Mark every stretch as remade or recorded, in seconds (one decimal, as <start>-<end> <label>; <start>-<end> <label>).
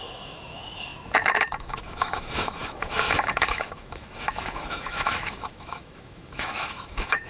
0.0-7.3 remade